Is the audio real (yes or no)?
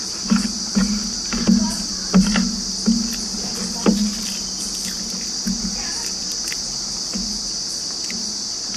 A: yes